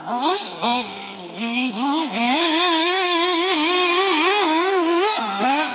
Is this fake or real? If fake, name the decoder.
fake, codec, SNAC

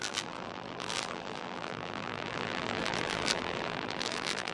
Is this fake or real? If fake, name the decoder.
fake, vocoder, BigVGAN v2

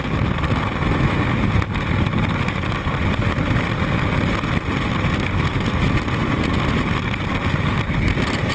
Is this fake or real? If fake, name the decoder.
real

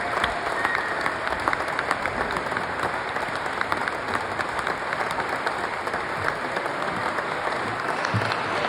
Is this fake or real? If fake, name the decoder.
fake, vocoder, BigVGAN v2